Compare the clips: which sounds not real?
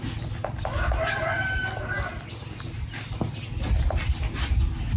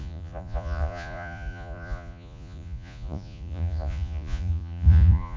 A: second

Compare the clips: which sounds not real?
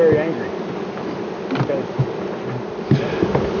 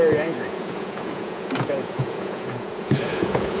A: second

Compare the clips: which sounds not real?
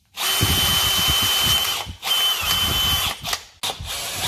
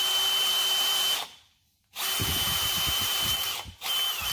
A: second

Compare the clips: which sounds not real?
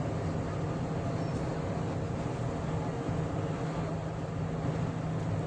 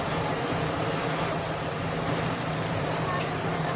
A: second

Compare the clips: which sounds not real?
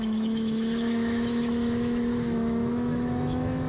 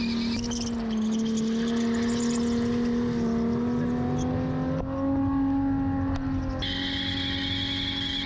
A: first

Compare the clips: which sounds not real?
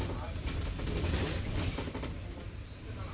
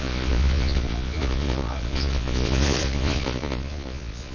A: second